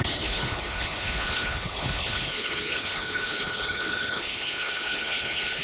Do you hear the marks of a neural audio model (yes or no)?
yes